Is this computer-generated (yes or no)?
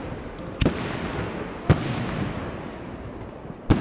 no